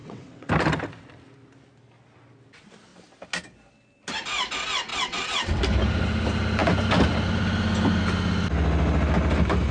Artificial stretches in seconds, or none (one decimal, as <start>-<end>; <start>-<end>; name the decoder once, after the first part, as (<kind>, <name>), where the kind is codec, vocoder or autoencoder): 0.0-0.5 (vocoder, WaveNeXt); 4.9-5.6